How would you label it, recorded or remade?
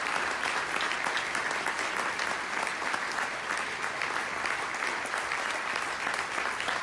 recorded